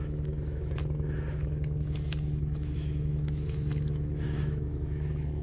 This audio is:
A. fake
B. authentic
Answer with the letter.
A